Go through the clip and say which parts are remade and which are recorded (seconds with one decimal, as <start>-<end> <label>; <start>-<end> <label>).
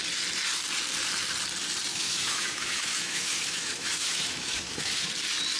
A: 0.0-1.9 recorded; 1.9-5.1 remade; 5.1-5.6 recorded